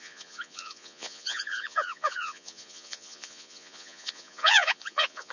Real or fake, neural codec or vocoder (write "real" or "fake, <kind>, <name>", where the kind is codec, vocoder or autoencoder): fake, vocoder, Vocos